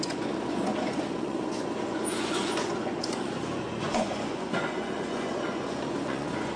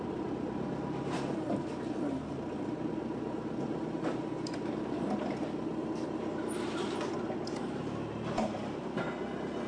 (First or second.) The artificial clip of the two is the first